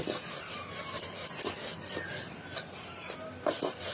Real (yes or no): yes